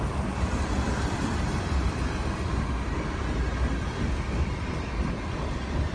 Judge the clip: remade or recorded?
remade